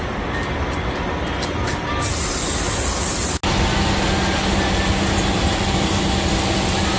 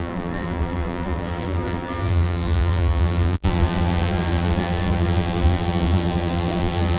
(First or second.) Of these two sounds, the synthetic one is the second